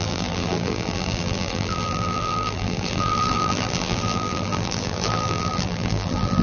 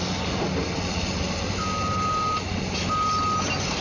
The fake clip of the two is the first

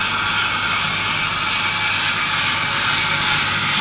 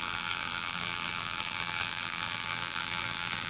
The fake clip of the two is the second